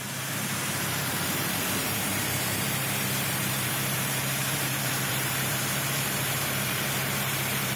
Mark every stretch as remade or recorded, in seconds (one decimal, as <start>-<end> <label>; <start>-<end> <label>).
0.0-7.8 remade